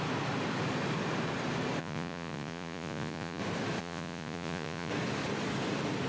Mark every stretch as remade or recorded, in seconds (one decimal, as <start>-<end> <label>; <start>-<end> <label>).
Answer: 0.0-1.8 recorded; 1.8-3.4 remade; 3.4-3.8 recorded; 3.8-4.9 remade; 4.9-6.1 recorded